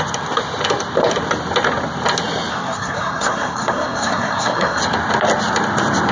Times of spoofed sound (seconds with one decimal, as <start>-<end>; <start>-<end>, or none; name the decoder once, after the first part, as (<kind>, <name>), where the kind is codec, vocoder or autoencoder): 2.5-4.8 (codec, SNAC)